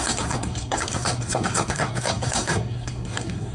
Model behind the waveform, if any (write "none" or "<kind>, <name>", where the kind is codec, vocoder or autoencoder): codec, SNAC